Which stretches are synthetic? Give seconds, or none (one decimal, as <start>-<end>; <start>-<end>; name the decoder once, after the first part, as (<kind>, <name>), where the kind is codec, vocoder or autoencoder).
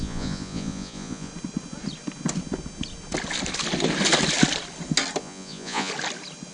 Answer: 0.0-1.3 (vocoder, Vocos); 5.2-5.9